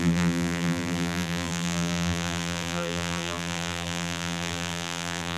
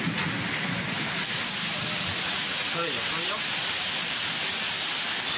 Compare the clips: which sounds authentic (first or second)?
second